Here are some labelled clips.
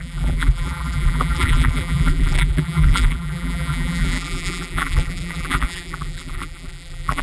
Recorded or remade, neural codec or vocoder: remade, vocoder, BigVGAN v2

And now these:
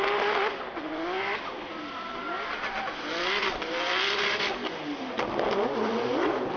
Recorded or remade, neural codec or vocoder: recorded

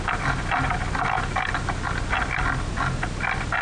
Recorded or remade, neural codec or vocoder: recorded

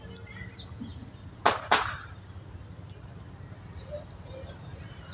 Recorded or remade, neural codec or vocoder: recorded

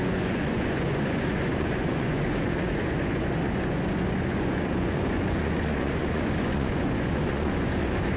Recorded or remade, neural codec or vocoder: remade, vocoder, Vocos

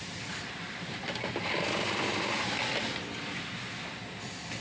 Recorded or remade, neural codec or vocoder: recorded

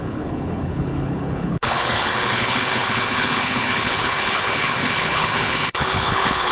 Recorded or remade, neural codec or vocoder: remade, codec, HILCodec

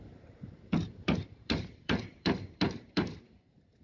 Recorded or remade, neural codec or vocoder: remade, vocoder, BigVGAN v2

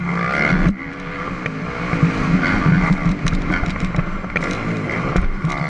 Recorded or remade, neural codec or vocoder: recorded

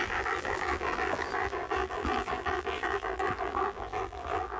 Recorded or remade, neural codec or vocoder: remade, vocoder, BigVGAN v2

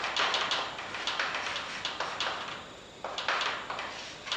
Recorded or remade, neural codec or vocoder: recorded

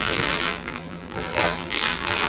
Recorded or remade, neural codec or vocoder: remade, vocoder, BigVGAN v2